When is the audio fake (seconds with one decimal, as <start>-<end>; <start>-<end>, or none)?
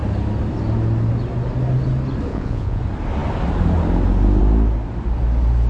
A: 2.3-2.8